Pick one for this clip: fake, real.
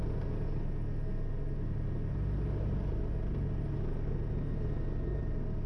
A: real